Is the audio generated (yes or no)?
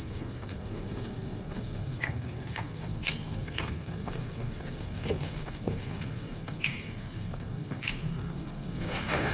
yes